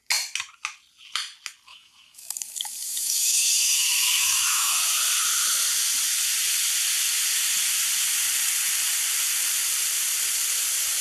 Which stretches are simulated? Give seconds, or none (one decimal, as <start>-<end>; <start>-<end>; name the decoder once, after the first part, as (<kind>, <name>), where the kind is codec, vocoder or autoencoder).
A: 1.7-5.0 (autoencoder, DAC-VAE)